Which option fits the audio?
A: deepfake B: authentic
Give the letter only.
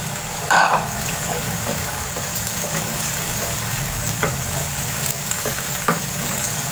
A